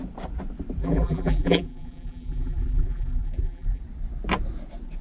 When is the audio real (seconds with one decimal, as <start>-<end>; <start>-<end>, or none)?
0.0-0.8; 3.8-5.0